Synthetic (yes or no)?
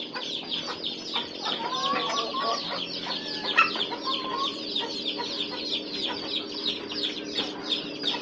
no